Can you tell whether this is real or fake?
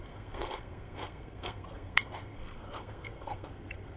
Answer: fake